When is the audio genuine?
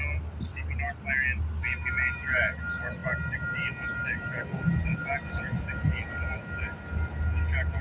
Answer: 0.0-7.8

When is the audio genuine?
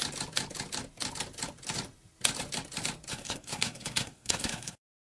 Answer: 0.0-3.1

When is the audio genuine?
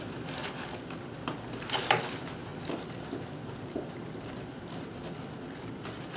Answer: 0.0-6.2